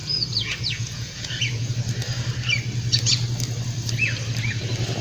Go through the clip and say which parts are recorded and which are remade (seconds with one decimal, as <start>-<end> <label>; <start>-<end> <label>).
0.0-1.7 remade; 1.7-5.0 recorded